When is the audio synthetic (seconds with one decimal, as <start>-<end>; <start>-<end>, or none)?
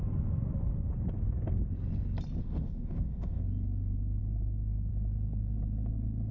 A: 2.4-3.4